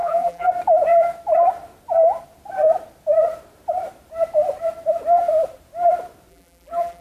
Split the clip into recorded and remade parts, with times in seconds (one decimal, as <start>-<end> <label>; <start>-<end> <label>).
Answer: 0.0-0.5 remade; 0.5-6.3 recorded; 6.3-7.0 remade